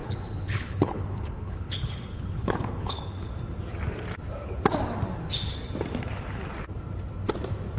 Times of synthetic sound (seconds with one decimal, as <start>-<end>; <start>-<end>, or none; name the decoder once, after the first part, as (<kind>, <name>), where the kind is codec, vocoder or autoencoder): 0.0-3.3 (codec, HILCodec)